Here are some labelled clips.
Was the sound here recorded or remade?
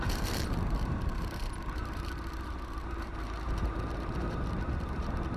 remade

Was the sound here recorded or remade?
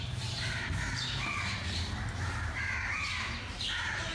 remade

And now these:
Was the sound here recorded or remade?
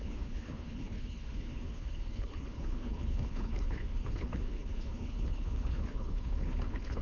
remade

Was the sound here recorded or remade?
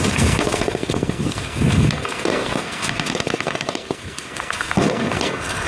remade